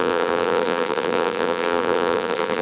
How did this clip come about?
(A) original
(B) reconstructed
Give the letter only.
B